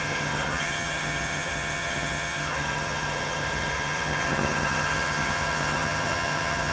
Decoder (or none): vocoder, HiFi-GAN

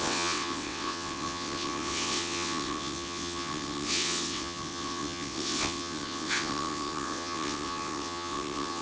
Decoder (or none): vocoder, WaveNeXt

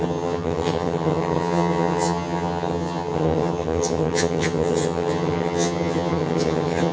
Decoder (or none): vocoder, HiFi-GAN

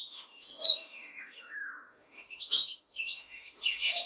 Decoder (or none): autoencoder, DAC-VAE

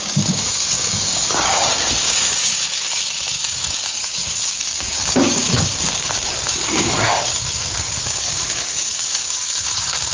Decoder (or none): codec, DAC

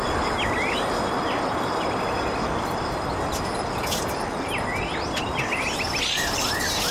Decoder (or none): none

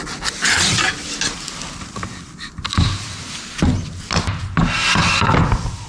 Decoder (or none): none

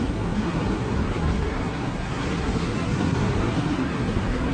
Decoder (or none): codec, SNAC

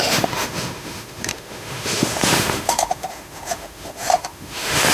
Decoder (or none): autoencoder, DAC-VAE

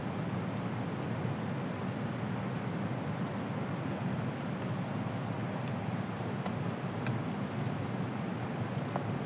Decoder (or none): none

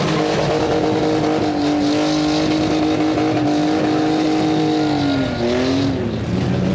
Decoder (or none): none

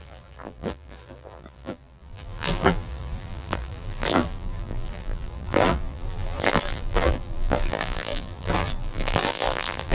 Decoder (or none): vocoder, BigVGAN v2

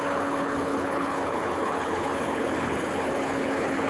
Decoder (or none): codec, HILCodec